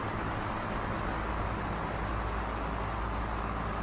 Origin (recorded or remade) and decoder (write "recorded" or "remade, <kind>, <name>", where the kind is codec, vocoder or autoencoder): recorded